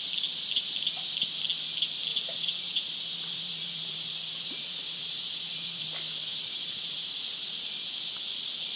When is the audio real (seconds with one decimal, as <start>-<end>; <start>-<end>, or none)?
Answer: 0.0-2.1; 5.8-6.3; 7.3-8.8